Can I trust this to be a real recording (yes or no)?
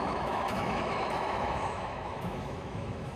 no